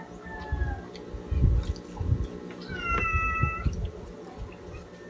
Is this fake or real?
real